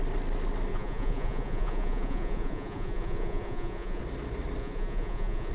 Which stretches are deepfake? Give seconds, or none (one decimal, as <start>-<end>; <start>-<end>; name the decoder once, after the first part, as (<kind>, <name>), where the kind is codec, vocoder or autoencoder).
0.7-4.0 (vocoder, Vocos); 4.6-5.5